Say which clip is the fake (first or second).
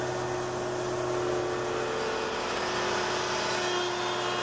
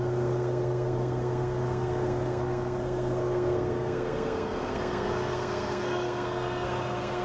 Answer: second